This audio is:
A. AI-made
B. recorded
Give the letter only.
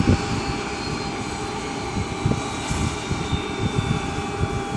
B